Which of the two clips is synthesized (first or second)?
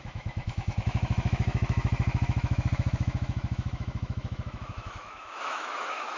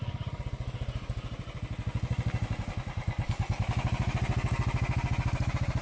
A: first